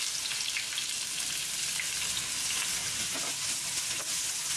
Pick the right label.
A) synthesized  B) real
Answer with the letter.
B